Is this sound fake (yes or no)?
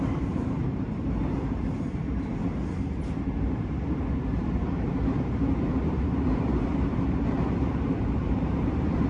yes